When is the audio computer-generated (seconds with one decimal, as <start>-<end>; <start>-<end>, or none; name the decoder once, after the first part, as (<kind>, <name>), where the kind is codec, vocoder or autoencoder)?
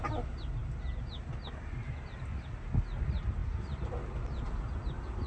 none